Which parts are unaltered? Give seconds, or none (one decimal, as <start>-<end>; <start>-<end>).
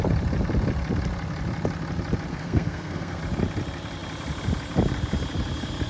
0.0-2.3; 3.2-5.9